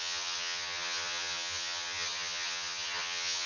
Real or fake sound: fake